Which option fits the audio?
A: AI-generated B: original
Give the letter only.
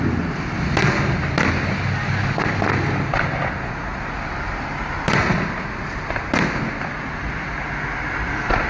B